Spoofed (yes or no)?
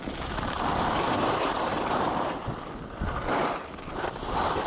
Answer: no